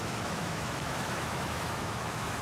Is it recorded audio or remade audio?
remade